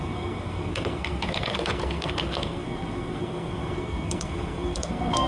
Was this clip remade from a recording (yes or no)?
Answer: yes